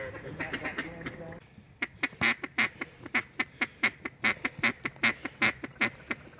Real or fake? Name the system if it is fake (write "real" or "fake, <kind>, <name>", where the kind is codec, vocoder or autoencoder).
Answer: real